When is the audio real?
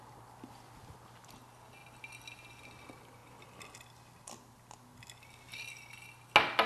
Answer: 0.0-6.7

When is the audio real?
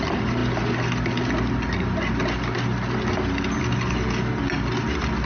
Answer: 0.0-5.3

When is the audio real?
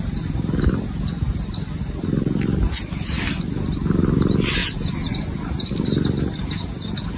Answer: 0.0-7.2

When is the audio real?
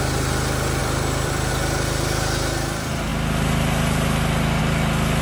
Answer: 0.0-0.8; 1.5-5.2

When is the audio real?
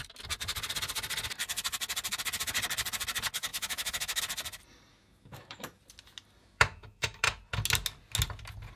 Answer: 0.0-3.5; 4.2-4.9; 5.8-6.4; 7.4-8.8